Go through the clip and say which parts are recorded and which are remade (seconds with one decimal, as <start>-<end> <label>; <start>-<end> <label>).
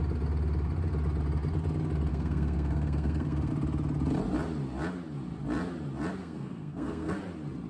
0.0-2.1 recorded; 2.1-3.5 remade; 3.5-6.2 recorded; 6.2-7.2 remade; 7.2-7.7 recorded